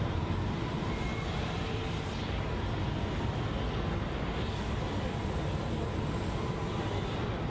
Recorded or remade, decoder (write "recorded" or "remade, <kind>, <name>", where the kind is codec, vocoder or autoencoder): recorded